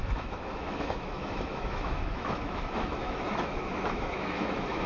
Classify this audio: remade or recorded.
remade